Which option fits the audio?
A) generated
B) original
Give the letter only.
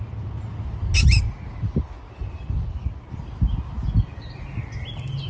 B